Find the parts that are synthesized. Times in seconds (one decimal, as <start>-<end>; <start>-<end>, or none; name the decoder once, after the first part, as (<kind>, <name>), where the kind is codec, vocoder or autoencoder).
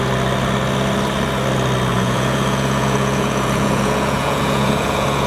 1.9-5.3 (vocoder, Vocos)